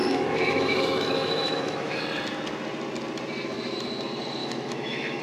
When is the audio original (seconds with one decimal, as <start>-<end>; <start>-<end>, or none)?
2.0-4.4